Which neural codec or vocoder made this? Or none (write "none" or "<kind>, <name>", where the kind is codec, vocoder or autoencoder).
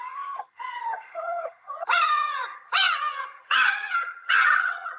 vocoder, HiFi-GAN